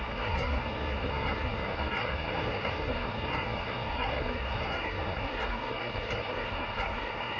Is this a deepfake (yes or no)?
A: yes